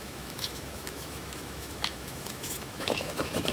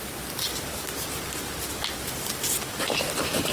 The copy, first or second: first